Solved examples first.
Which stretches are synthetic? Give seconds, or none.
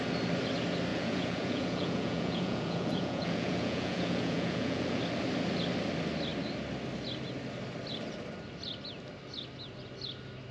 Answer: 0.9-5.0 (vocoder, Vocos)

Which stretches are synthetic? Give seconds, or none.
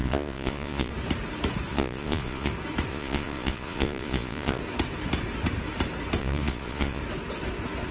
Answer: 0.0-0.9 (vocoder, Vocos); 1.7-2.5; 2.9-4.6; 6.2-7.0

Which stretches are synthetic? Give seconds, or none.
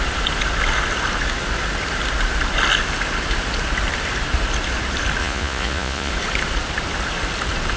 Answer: 5.2-6.1 (vocoder, Vocos)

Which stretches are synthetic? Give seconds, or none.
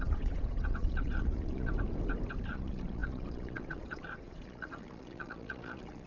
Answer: 0.0-1.7 (vocoder, Vocos); 2.5-6.1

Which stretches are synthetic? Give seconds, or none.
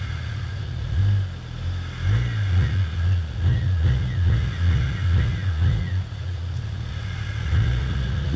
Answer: 0.0-1.0 (vocoder, Vocos); 2.5-8.4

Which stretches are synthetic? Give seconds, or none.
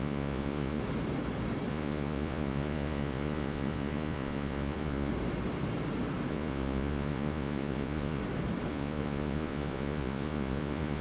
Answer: 0.0-0.8 (vocoder, Vocos); 1.7-5.1; 6.3-8.2; 8.7-11.0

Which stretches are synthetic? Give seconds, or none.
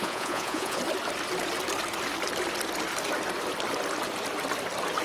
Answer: 0.0-0.8 (vocoder, Vocos)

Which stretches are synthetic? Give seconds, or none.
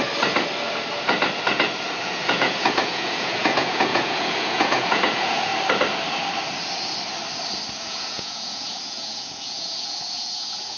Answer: 2.0-5.5 (vocoder, Vocos); 7.7-10.8